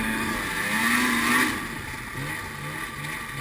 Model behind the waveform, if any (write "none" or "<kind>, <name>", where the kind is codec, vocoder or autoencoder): none